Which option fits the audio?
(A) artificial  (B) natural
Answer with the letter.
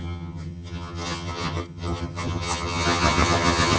A